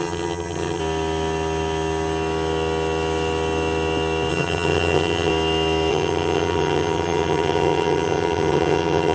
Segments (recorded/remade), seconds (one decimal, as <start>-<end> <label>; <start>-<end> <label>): 0.0-0.8 remade; 0.8-4.3 recorded; 4.3-5.3 remade; 5.3-5.9 recorded; 5.9-9.1 remade